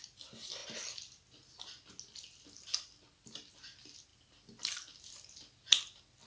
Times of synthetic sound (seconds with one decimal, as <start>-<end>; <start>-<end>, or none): none